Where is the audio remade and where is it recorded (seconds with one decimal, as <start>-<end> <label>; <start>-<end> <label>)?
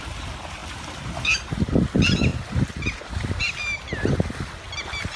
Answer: 0.0-5.2 recorded